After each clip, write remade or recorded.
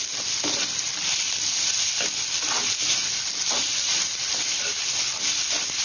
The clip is recorded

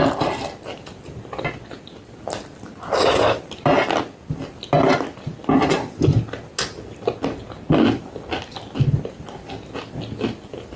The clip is recorded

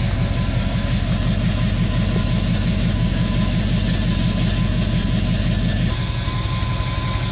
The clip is recorded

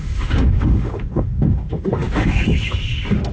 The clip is remade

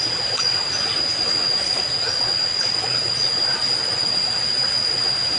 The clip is recorded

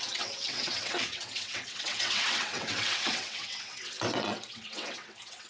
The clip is remade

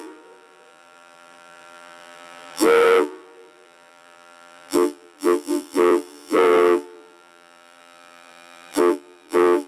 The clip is remade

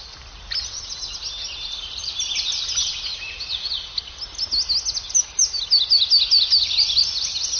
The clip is recorded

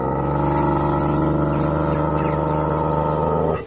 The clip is recorded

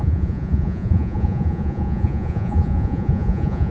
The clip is remade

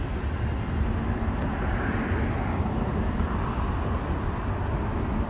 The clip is recorded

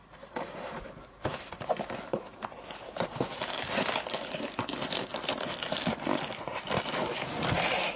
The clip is remade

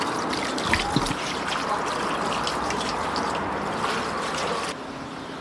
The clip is recorded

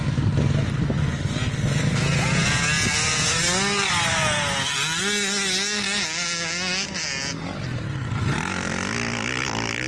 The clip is recorded